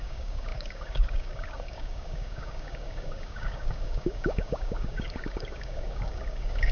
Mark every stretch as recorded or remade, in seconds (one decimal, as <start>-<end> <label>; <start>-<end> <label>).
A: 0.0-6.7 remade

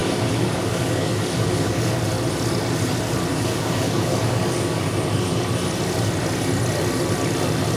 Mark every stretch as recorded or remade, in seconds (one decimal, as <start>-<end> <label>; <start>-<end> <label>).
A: 0.0-1.9 remade; 1.9-3.3 recorded; 3.3-4.9 remade; 4.9-7.8 recorded

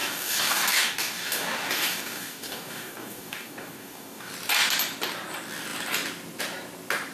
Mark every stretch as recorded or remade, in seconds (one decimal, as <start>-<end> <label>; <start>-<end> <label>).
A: 0.0-4.3 remade; 4.3-7.1 recorded

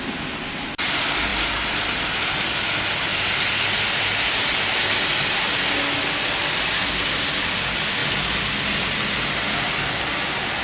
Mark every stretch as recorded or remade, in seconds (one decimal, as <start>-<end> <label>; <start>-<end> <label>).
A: 0.0-10.6 recorded

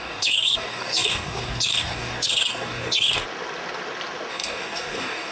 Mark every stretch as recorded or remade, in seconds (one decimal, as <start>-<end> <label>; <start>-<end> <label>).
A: 0.0-3.2 remade; 3.2-4.3 recorded; 4.3-5.3 remade

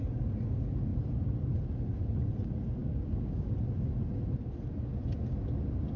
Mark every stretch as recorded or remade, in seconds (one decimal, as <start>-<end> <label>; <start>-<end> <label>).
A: 0.0-2.8 recorded; 2.8-3.5 remade; 3.5-6.0 recorded

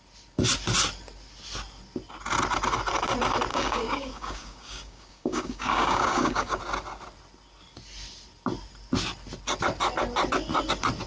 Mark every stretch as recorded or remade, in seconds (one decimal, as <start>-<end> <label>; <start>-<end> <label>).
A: 0.0-3.5 recorded; 3.5-6.6 remade; 6.6-11.1 recorded